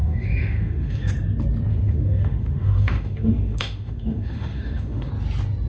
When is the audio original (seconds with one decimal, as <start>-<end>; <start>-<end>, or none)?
1.1-1.7; 5.1-5.7